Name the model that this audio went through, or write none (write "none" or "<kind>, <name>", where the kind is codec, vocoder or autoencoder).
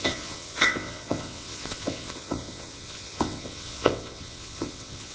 vocoder, WaveNeXt